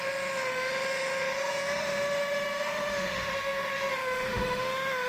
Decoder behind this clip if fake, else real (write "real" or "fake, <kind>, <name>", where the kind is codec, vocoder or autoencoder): fake, autoencoder, DAC-VAE